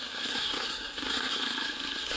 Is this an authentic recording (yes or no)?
no